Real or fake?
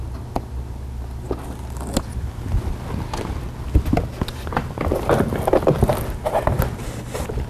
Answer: real